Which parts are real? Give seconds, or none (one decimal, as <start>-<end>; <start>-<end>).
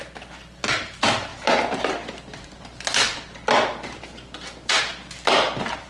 0.0-5.9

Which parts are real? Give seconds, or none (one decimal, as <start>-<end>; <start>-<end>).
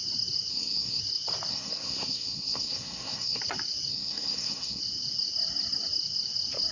0.0-0.5; 1.0-1.5; 3.4-3.9; 4.8-6.7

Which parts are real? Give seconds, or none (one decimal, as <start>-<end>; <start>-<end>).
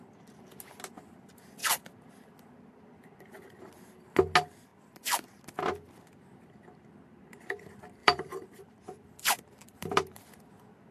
0.0-8.0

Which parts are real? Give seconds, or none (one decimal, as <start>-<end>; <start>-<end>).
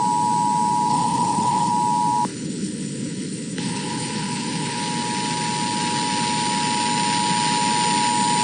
0.0-0.9; 1.7-2.3; 4.8-8.4